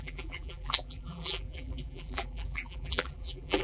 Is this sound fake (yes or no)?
yes